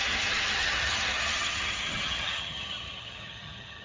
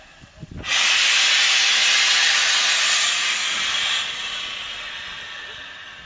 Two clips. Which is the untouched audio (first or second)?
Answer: second